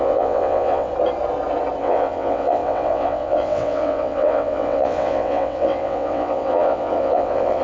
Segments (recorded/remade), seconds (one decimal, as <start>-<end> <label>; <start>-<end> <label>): 0.0-0.9 remade; 0.9-1.8 recorded; 1.8-7.6 remade